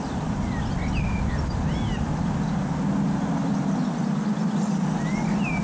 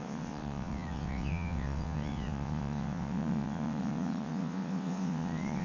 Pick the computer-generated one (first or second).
second